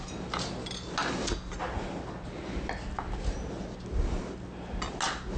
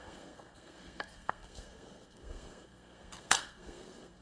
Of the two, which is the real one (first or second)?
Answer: first